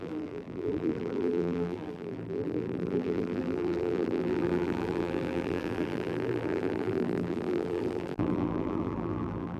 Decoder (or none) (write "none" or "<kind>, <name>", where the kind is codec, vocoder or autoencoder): vocoder, BigVGAN v2